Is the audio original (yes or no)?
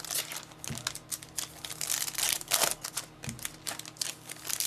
yes